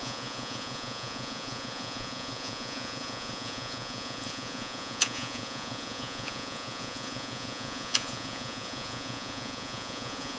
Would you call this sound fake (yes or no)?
yes